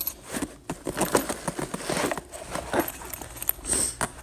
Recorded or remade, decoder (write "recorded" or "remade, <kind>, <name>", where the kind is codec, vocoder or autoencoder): recorded